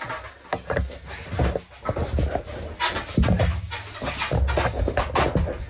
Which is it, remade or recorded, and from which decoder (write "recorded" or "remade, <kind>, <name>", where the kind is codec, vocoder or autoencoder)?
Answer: recorded